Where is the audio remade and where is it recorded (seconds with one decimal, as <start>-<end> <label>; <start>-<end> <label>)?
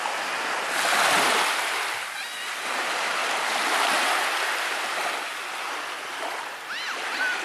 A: 0.0-7.4 recorded